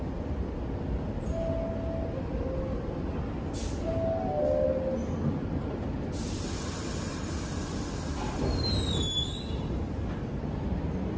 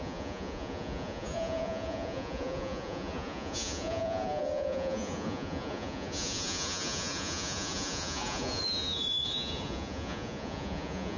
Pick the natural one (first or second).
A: first